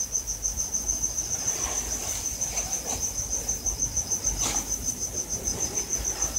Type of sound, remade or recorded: recorded